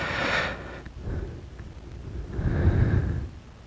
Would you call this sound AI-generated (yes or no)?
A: no